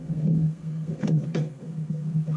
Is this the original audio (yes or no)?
no